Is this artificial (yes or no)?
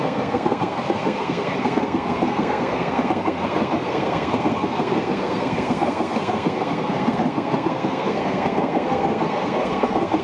yes